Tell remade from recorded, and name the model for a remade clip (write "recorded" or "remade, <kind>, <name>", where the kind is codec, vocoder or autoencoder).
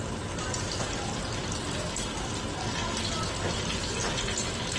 recorded